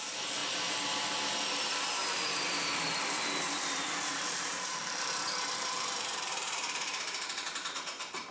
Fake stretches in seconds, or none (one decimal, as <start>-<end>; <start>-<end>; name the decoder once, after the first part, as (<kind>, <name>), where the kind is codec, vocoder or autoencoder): 0.0-8.3 (vocoder, BigVGAN v2)